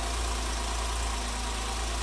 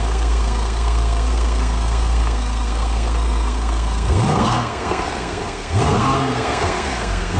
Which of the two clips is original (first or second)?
first